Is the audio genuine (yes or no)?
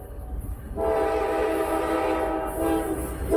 yes